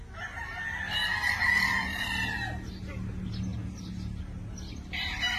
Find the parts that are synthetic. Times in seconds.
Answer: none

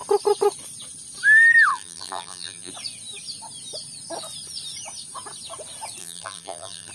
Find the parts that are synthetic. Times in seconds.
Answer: 1.7-2.7 (vocoder, BigVGAN v2); 6.0-6.9